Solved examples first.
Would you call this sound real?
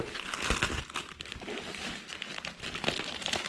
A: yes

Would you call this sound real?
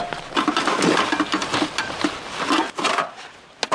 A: yes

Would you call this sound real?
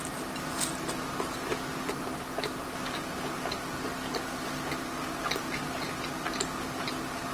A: yes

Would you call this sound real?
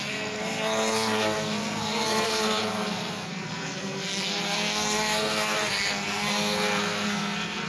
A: no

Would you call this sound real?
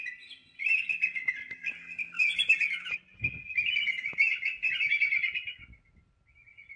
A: yes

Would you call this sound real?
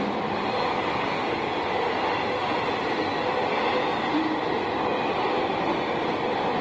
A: yes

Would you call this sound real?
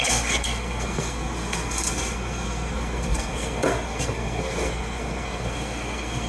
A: no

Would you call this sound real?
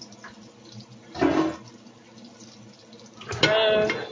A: yes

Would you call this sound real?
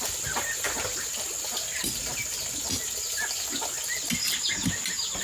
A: yes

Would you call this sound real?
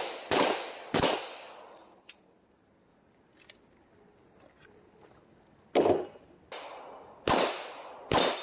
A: yes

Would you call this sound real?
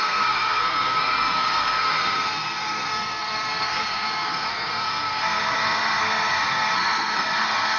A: no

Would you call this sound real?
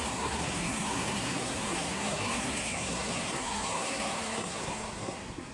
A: no